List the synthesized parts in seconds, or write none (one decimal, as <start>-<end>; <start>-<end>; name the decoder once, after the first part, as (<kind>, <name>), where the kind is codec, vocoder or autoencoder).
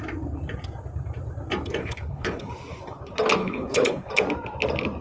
1.8-2.5 (codec, HILCodec); 3.4-4.1